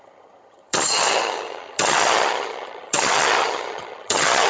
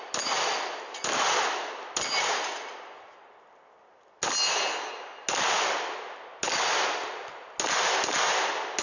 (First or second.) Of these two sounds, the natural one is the second